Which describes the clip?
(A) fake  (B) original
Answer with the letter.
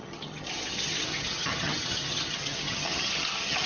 A